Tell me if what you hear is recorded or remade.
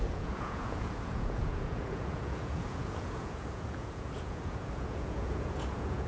remade